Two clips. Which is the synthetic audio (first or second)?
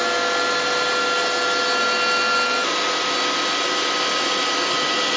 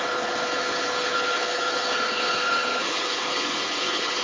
second